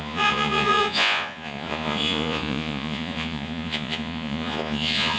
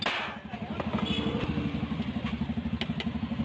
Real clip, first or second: second